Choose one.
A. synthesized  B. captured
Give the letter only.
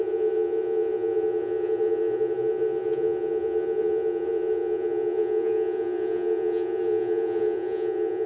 A